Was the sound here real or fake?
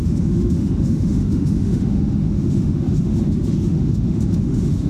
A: fake